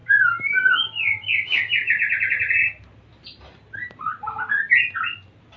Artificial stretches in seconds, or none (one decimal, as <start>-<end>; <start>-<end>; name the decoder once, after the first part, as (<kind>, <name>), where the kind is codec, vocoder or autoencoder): none